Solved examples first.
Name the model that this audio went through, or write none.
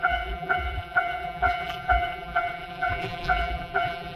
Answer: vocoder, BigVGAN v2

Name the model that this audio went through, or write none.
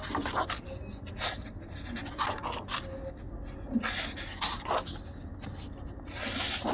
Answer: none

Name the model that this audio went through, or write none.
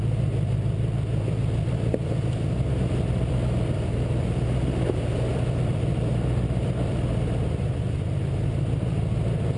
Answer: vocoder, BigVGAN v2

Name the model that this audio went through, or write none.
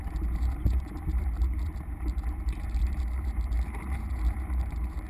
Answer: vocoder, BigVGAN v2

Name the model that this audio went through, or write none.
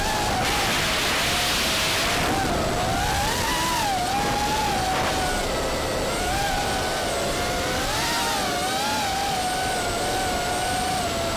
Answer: none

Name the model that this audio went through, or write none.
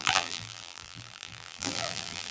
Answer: vocoder, BigVGAN v2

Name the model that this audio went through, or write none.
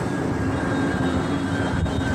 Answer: vocoder, BigVGAN v2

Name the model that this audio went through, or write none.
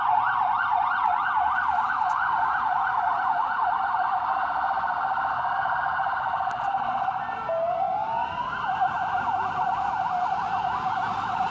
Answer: vocoder, BigVGAN v2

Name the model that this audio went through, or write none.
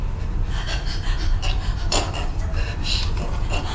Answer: vocoder, BigVGAN v2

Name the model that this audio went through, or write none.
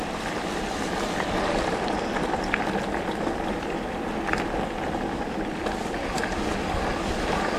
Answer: vocoder, BigVGAN v2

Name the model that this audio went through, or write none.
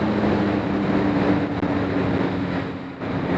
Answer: none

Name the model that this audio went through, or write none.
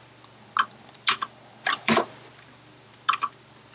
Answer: vocoder, BigVGAN v2